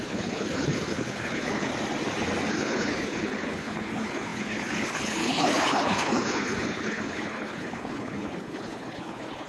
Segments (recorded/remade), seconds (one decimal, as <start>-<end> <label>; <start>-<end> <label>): 0.0-1.7 remade; 1.7-2.5 recorded; 2.5-9.5 remade